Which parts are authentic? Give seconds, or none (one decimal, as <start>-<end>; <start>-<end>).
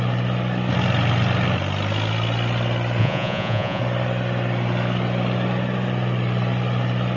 0.0-3.0; 3.8-7.2